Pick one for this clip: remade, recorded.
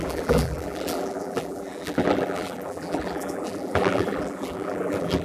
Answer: remade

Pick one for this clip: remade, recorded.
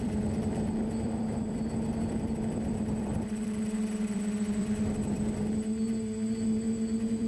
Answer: remade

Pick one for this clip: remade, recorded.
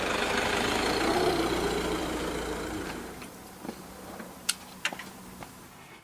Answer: remade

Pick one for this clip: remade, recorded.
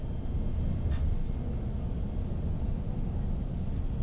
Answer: recorded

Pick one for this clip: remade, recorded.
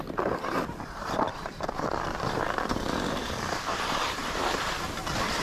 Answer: remade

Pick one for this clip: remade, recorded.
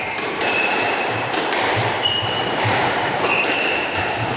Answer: remade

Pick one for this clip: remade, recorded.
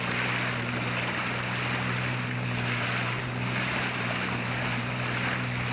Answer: recorded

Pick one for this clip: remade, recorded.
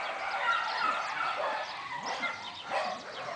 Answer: recorded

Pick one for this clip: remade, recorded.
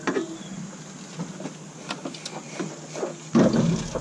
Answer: recorded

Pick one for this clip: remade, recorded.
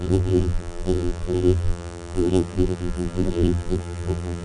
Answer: remade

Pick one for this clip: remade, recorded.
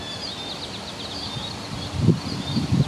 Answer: recorded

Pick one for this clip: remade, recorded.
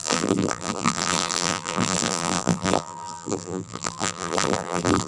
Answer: remade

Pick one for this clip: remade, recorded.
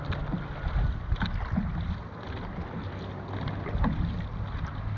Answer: recorded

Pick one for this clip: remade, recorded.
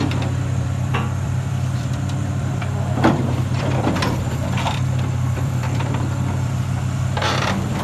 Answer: remade